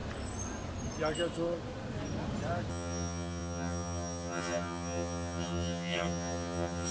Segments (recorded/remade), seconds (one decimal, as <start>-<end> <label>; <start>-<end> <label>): 0.0-2.7 recorded; 2.7-6.9 remade